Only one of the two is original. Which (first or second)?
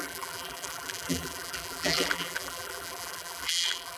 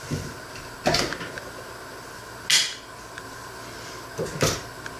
second